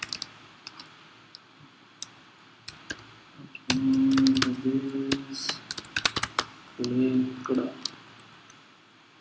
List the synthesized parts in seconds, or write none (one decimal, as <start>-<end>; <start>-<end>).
none